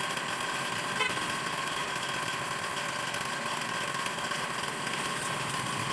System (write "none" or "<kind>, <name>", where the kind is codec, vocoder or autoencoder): none